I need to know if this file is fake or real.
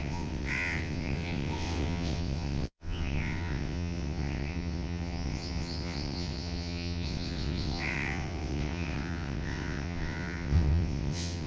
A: fake